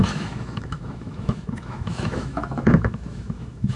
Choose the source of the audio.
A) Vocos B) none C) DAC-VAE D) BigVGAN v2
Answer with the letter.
C